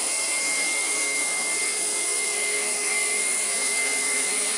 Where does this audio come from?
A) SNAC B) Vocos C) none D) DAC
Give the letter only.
A